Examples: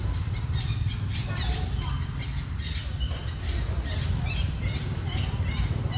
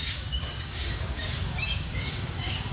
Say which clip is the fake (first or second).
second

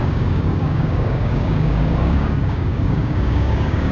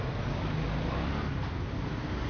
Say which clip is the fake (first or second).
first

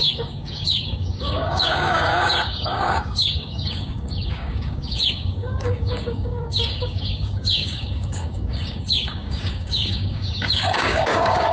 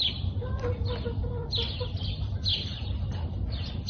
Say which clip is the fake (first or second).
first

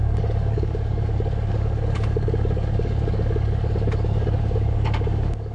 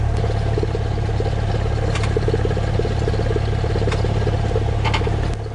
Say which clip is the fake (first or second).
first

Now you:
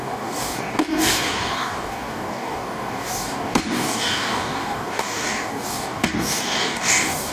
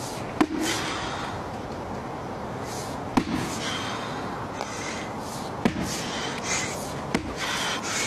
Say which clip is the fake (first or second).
first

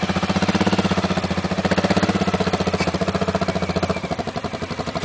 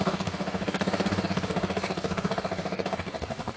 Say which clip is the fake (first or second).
second